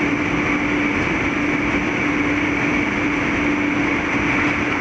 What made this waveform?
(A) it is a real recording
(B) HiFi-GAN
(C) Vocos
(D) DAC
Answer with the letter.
A